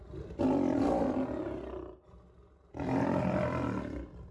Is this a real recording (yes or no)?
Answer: yes